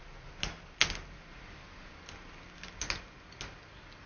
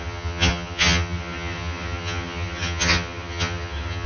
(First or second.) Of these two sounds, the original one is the first